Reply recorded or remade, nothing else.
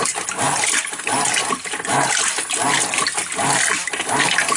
recorded